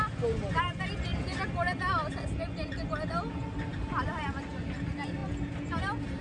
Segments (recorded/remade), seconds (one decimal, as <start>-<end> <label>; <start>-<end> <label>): 0.0-6.2 recorded